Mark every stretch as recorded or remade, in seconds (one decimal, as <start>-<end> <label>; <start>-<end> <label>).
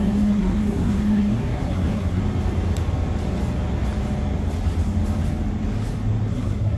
0.0-2.2 remade; 2.2-6.3 recorded; 6.3-6.8 remade